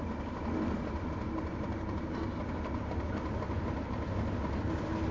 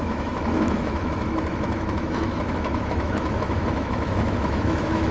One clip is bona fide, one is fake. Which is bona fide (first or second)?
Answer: first